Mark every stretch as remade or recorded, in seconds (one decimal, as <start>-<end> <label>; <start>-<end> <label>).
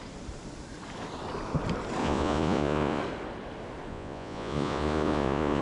0.0-2.0 recorded; 2.0-3.0 remade; 3.0-3.9 recorded; 3.9-5.6 remade